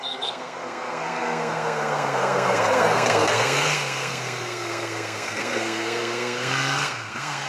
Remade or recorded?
remade